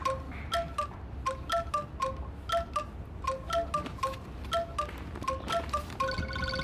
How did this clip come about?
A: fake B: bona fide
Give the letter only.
B